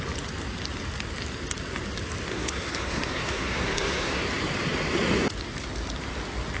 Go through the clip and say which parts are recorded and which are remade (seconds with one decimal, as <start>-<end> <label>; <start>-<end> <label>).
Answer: 0.0-2.3 recorded; 2.3-4.2 remade; 4.2-6.6 recorded